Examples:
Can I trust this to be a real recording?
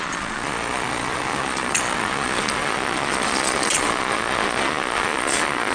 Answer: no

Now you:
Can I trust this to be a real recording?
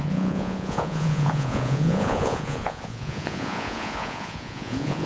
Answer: no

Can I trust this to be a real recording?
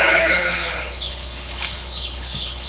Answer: no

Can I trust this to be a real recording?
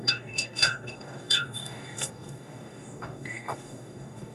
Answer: no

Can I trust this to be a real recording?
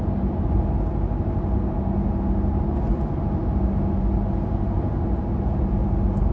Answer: yes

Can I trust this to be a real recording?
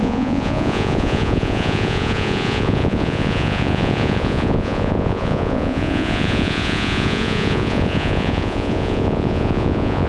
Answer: no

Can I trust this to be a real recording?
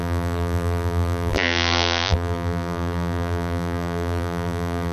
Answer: no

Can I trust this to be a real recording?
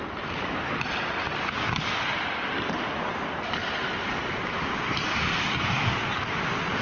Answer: yes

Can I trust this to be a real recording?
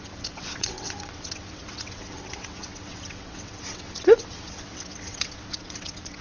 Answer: no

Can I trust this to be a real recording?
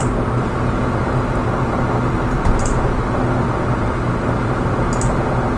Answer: yes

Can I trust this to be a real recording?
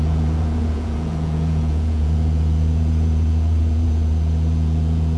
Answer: no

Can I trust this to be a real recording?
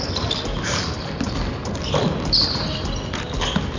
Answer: yes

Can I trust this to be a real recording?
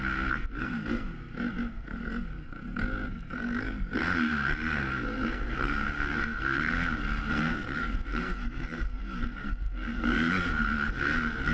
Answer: no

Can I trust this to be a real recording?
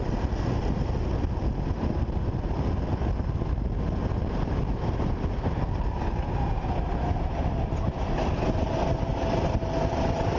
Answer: yes